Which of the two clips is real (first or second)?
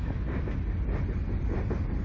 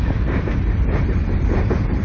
first